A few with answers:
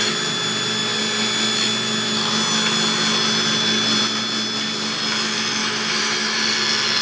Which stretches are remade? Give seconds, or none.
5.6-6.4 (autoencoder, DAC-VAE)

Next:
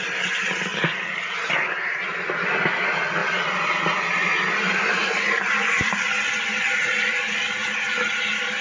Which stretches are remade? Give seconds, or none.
none

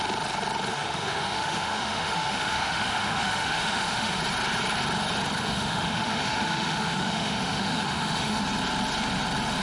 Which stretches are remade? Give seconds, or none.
0.7-4.2 (autoencoder, DAC-VAE); 5.4-8.4

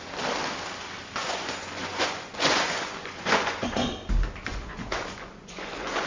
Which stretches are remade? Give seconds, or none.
1.2-3.9 (vocoder, Vocos); 4.5-6.1

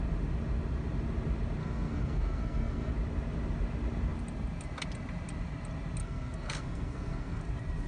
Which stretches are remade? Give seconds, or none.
1.6-2.9 (codec, SNAC); 6.0-7.4